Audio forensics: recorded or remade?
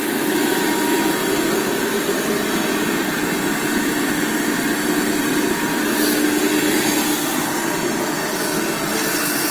recorded